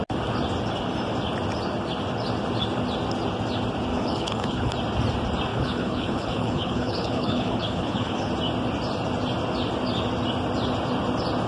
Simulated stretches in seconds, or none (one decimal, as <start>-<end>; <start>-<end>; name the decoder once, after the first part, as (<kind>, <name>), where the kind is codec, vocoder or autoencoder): 3.9-4.7 (codec, HILCodec); 5.5-8.3